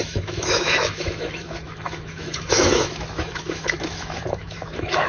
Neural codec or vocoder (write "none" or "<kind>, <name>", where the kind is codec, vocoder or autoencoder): autoencoder, DAC-VAE